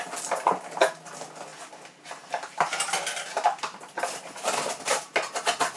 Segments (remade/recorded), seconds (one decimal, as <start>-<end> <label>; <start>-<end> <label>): 0.0-5.8 recorded